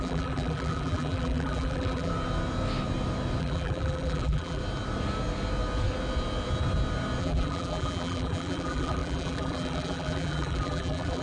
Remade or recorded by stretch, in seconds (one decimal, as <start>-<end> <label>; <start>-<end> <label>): 0.0-2.1 remade; 2.1-3.4 recorded; 3.4-4.6 remade; 4.6-7.2 recorded; 7.2-11.2 remade